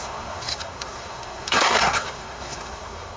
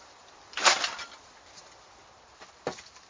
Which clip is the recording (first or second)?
second